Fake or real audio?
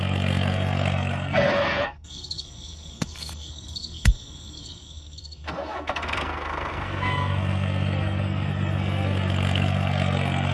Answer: fake